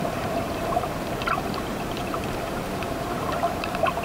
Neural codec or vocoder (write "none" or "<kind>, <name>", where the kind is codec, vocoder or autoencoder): vocoder, BigVGAN v2